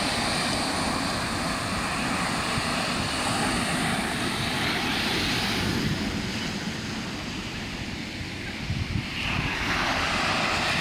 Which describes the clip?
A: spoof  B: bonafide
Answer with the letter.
B